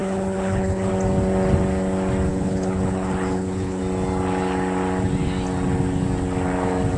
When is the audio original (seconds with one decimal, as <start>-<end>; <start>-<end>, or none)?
0.9-2.3; 3.8-7.0